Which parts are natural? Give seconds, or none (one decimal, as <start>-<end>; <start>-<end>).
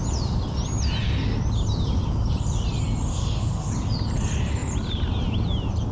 0.0-3.1; 3.7-5.9